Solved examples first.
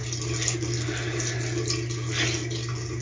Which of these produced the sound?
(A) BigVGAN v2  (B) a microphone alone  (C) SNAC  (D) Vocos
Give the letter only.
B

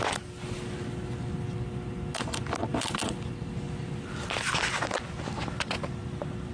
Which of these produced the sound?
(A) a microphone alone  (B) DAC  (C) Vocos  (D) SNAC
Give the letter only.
A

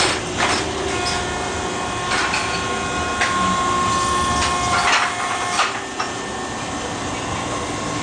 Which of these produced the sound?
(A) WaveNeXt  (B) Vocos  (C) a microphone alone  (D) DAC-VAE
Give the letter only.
C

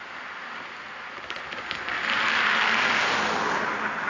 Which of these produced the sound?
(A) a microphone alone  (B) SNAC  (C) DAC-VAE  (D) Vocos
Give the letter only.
A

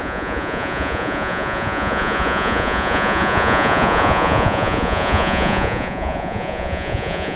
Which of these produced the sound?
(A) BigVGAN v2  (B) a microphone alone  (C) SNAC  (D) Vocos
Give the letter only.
D